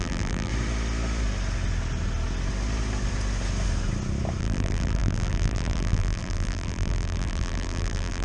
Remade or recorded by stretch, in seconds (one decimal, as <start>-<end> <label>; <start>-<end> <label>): 0.0-0.5 remade; 0.5-4.4 recorded; 4.4-8.2 remade